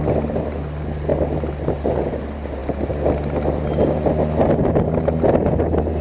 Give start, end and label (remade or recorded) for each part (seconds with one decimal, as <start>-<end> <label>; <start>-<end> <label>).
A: 0.0-6.0 recorded